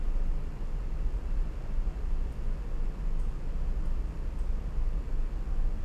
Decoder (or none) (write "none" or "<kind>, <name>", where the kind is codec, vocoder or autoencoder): none